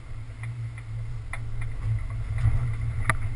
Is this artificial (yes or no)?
no